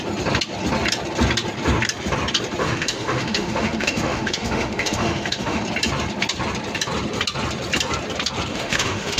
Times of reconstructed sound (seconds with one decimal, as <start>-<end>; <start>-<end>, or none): 2.6-5.6; 8.5-9.2